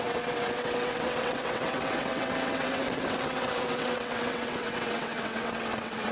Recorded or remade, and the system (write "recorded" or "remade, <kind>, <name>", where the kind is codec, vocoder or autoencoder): remade, vocoder, WaveNeXt